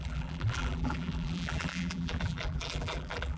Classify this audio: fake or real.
fake